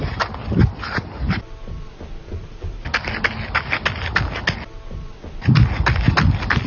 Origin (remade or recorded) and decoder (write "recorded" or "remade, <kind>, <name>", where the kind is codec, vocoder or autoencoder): recorded